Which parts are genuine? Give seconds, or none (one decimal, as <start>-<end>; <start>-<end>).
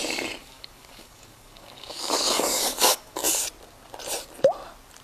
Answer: 0.0-0.4; 3.4-5.0